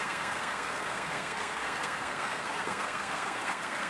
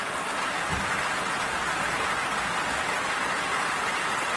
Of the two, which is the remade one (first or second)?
first